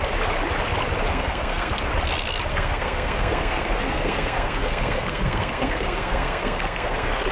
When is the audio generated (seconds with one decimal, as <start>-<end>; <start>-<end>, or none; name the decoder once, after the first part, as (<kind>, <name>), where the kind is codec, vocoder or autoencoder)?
1.1-1.9 (codec, SNAC); 2.5-7.3